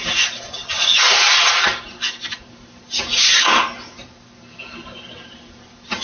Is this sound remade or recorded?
remade